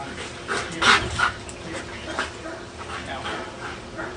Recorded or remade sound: recorded